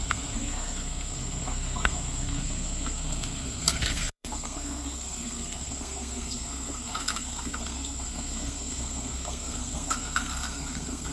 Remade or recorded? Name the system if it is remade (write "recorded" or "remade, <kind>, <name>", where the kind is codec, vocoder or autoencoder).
remade, codec, SNAC